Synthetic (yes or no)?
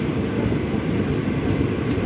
no